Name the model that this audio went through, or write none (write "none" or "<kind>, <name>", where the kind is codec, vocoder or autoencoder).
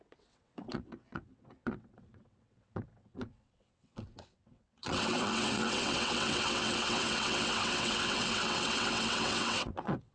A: vocoder, WaveNeXt